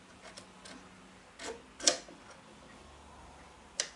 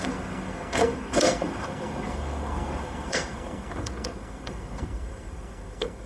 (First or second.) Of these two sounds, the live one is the first